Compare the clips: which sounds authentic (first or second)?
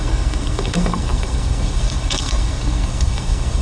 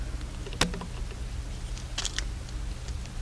second